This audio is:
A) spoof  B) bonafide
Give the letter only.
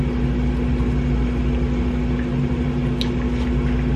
B